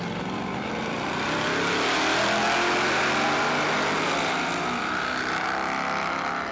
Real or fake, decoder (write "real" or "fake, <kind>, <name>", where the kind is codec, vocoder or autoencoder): real